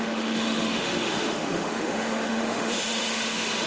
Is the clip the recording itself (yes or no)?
no